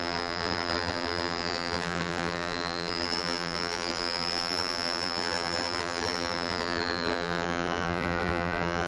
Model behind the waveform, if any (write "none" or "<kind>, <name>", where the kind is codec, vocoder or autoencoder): vocoder, BigVGAN v2